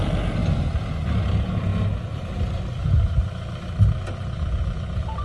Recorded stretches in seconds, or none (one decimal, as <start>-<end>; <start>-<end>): 0.4-1.2; 1.7-2.6; 3.2-4.6